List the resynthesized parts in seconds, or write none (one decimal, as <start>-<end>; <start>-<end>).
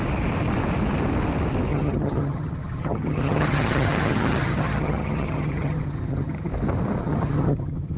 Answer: 1.7-6.5; 7.0-8.0